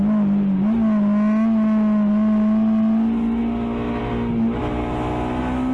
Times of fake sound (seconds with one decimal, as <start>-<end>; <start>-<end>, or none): none